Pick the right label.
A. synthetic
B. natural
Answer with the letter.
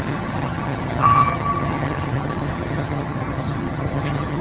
A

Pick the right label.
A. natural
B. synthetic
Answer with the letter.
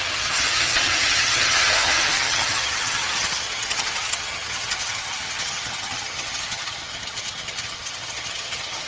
B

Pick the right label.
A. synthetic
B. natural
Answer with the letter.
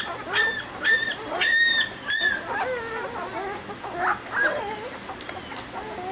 B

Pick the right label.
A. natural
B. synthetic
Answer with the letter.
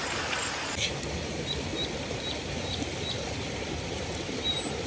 A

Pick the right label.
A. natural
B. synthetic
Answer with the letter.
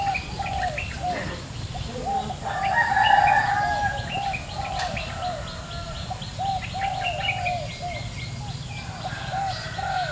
A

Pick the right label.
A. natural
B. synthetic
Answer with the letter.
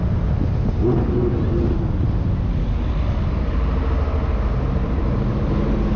A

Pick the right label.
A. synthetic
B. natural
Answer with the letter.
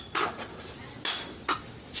B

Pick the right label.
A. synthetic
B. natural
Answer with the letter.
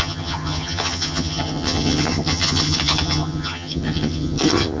A